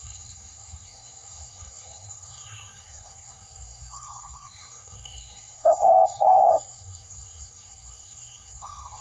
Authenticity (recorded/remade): remade